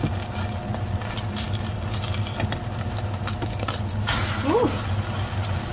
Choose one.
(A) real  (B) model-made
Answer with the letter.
A